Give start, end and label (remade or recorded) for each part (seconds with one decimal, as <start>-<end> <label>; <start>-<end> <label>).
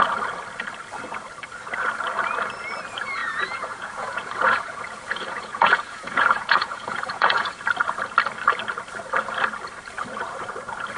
0.0-3.2 recorded; 3.2-7.6 remade; 7.6-11.0 recorded